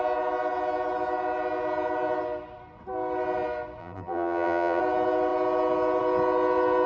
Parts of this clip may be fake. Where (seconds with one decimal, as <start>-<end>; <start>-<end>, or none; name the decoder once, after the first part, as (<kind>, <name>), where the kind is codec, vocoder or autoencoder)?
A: 3.8-4.8 (vocoder, BigVGAN v2)